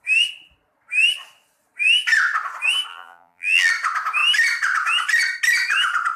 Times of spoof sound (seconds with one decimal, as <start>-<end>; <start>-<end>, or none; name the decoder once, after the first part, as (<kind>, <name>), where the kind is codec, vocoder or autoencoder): 2.9-3.7 (vocoder, BigVGAN v2)